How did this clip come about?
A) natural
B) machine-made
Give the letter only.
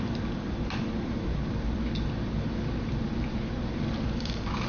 B